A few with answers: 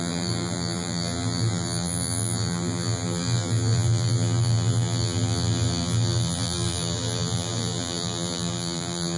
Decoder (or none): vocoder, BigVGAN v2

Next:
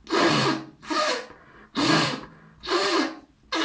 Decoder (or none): none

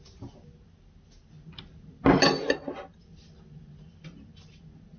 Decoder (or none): none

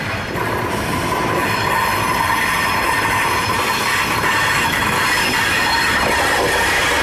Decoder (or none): none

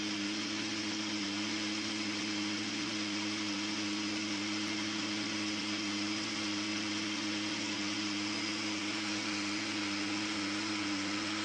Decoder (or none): vocoder, Vocos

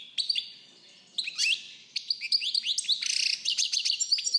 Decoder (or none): none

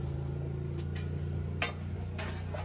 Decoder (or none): none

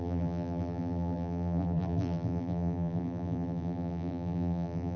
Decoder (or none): vocoder, BigVGAN v2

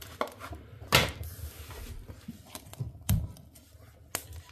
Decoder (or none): none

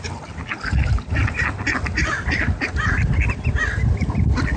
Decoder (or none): none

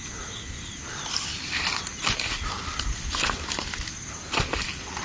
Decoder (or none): none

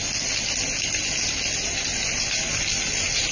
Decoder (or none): none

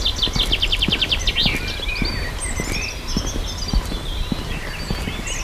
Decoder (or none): none